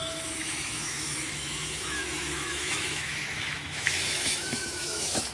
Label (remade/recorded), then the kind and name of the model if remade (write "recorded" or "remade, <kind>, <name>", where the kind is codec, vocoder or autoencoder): remade, autoencoder, DAC-VAE